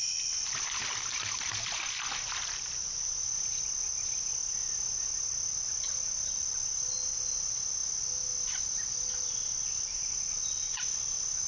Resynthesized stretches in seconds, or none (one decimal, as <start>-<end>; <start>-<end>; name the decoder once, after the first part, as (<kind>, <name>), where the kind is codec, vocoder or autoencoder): none